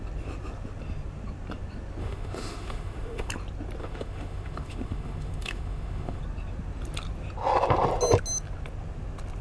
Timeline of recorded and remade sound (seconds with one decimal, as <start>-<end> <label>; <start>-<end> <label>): 0.0-2.0 recorded; 2.0-3.3 remade; 3.3-3.8 recorded; 3.8-6.2 remade; 6.2-9.4 recorded